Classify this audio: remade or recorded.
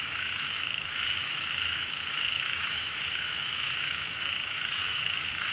remade